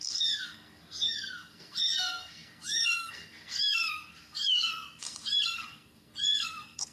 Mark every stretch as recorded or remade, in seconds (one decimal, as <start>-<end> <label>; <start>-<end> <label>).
0.0-6.9 remade